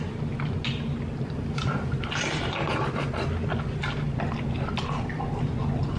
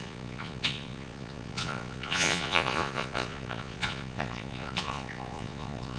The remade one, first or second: second